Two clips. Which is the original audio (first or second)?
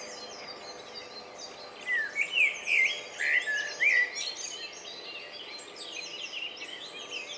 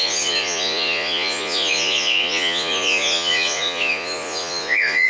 first